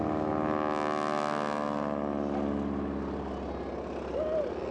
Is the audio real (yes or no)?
yes